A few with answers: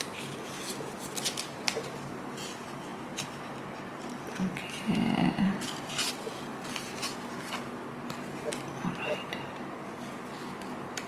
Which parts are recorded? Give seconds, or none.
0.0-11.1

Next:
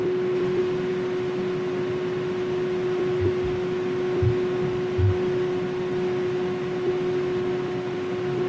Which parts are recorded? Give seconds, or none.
0.0-8.5

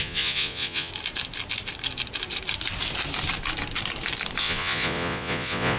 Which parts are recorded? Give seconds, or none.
0.9-4.4

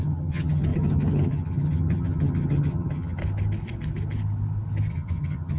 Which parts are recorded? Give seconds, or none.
3.2-4.9

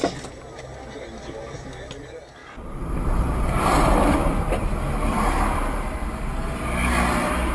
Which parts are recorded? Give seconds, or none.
0.0-2.4; 6.9-7.5